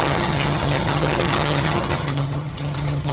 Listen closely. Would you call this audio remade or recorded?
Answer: remade